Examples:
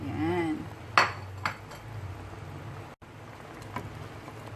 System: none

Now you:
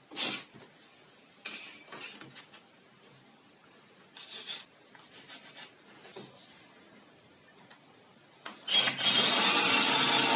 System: none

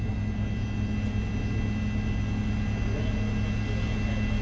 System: none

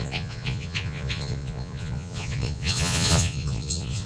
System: vocoder, Vocos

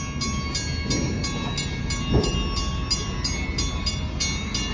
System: none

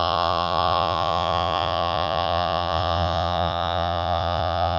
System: vocoder, Vocos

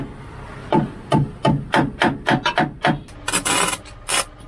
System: none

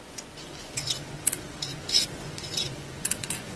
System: vocoder, Vocos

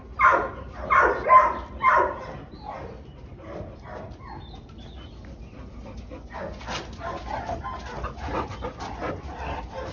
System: none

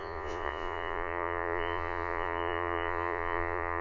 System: vocoder, Vocos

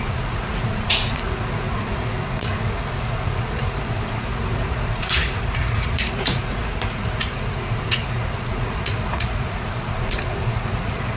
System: vocoder, Vocos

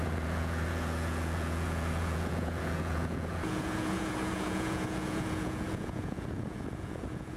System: vocoder, Vocos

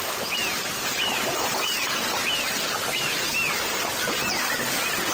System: none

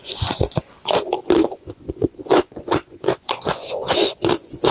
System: vocoder, Vocos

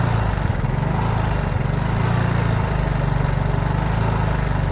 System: none